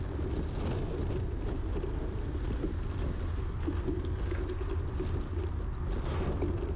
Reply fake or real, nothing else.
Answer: real